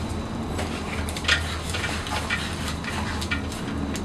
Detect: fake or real real